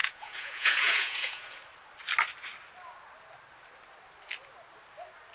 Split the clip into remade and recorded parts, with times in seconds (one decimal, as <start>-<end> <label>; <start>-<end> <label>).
0.0-1.6 remade; 1.6-5.3 recorded